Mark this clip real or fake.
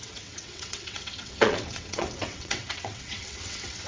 fake